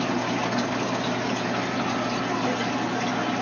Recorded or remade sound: recorded